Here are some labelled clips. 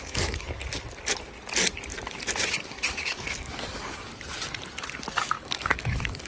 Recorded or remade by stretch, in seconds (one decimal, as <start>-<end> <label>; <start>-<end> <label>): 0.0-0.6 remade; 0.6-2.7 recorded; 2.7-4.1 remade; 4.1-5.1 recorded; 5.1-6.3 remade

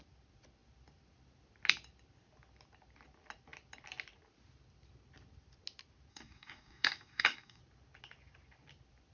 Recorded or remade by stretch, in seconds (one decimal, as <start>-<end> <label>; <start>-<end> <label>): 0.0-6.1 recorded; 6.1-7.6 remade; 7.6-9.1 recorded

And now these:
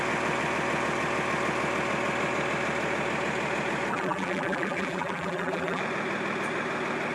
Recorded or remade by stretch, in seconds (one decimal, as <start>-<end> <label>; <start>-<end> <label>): 0.0-3.9 recorded; 3.9-5.8 remade; 5.8-7.1 recorded

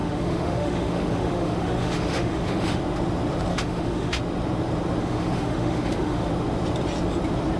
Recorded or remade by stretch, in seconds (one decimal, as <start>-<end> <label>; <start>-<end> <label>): 0.0-2.8 remade; 2.8-3.5 recorded; 3.5-4.2 remade; 4.2-5.0 recorded; 5.0-6.3 remade; 6.3-7.6 recorded